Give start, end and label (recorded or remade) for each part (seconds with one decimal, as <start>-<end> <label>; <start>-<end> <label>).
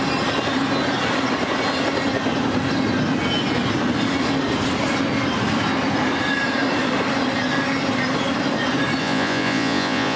0.0-9.0 recorded; 9.0-10.2 remade